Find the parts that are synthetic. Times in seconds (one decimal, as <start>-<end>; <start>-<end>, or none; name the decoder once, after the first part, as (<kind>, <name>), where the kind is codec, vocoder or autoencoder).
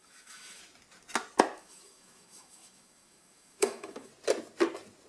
0.0-0.6 (autoencoder, DAC-VAE); 1.6-4.1